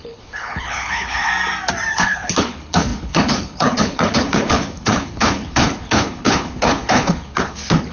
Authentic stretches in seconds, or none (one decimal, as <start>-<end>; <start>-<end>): 1.3-1.9